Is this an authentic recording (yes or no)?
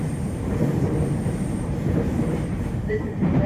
no